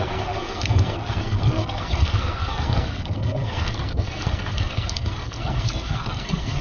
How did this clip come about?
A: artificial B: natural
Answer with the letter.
A